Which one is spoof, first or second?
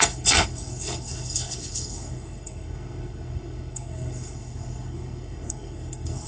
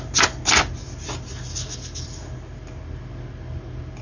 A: first